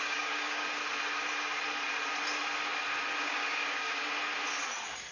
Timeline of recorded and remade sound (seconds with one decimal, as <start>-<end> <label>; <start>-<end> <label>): 0.0-0.8 remade; 0.8-3.2 recorded; 3.2-4.1 remade; 4.1-5.1 recorded